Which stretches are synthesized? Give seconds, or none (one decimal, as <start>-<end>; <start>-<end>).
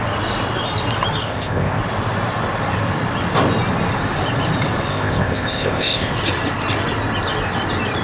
1.2-1.8; 4.9-6.1